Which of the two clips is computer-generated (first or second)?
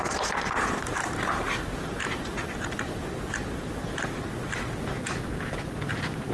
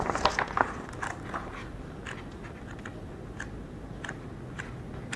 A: first